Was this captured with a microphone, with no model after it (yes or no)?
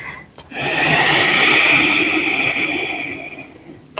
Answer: yes